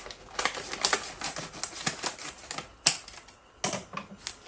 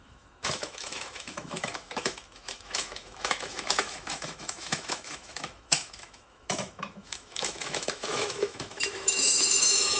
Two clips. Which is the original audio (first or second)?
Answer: first